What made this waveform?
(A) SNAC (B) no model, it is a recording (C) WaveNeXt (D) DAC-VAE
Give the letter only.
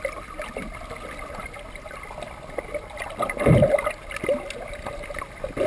B